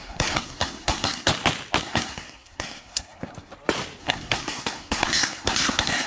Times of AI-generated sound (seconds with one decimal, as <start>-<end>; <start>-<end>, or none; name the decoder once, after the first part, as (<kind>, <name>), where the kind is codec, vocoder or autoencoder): 0.0-1.3 (codec, SNAC); 1.8-3.5; 4.0-6.1